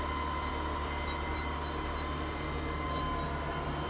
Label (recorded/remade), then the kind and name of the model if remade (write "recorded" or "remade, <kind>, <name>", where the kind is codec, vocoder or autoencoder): recorded